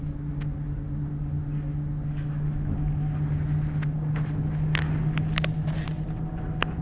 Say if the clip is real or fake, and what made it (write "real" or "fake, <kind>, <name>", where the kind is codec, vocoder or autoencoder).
real